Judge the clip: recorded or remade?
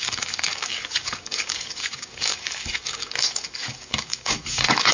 remade